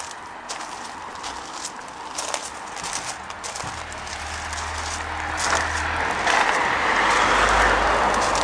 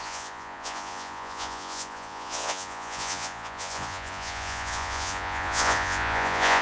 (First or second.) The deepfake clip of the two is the second